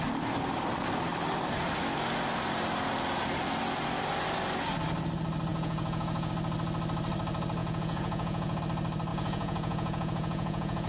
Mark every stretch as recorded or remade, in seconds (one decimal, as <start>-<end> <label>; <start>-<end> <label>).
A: 0.0-5.5 recorded; 5.5-6.3 remade; 6.3-7.6 recorded; 7.6-8.6 remade; 8.6-9.1 recorded; 9.1-10.9 remade